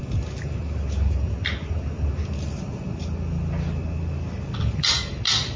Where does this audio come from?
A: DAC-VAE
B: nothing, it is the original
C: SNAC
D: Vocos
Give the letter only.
B